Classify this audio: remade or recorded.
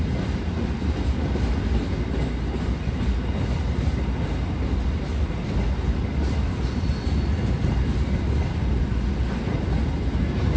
recorded